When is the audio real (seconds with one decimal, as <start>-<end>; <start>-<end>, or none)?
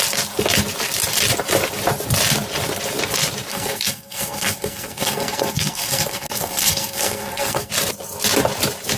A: 0.0-3.5; 7.7-9.0